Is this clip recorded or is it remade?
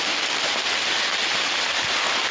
recorded